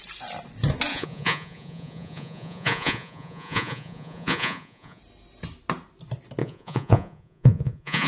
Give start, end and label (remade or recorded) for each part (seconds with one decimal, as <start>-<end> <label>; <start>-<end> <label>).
0.0-0.9 recorded; 0.9-5.0 remade; 5.0-6.4 recorded; 6.4-8.1 remade